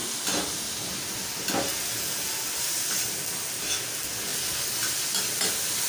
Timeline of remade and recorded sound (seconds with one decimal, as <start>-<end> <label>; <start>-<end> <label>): 0.0-5.9 recorded